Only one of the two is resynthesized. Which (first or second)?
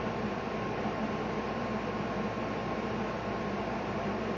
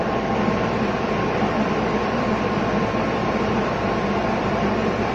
second